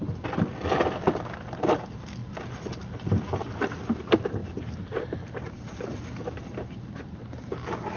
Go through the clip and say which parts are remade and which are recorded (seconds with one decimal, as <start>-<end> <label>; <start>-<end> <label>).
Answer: 0.0-8.0 recorded